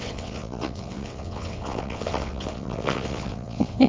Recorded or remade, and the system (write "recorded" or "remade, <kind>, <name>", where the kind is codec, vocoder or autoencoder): remade, vocoder, WaveNeXt